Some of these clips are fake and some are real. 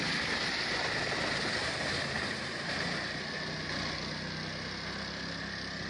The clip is real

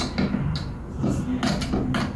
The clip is real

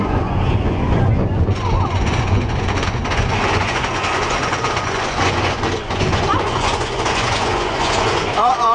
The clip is fake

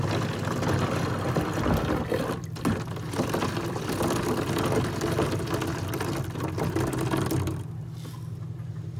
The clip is real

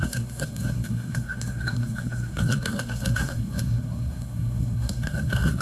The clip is fake